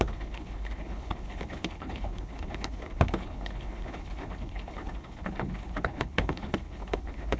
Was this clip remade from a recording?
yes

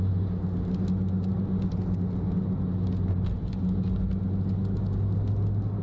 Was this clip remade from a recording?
no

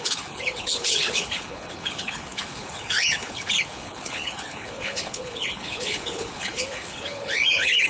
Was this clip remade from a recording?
yes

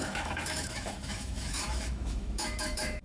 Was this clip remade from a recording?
yes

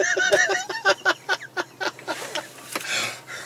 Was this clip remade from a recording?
no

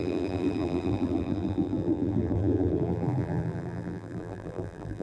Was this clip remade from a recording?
yes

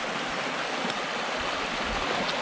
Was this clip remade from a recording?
no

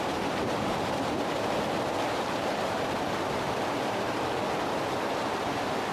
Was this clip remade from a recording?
no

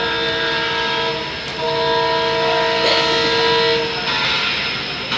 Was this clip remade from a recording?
no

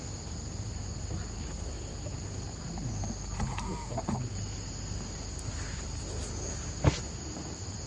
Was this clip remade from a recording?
no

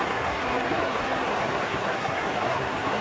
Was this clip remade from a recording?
yes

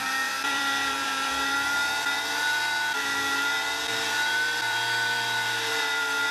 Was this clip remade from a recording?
yes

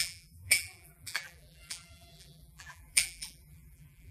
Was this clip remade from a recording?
yes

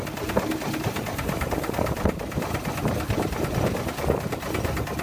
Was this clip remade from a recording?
no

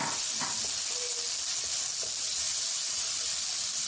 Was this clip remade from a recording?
no